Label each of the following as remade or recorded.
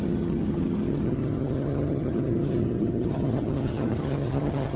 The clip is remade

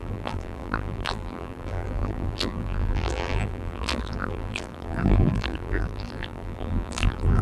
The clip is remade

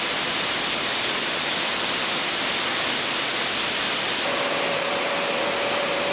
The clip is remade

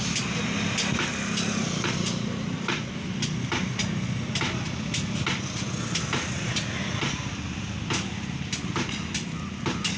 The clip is recorded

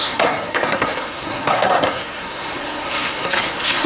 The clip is remade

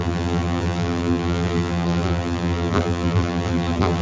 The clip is remade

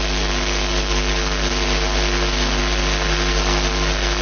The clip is remade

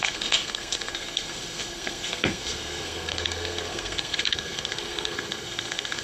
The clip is remade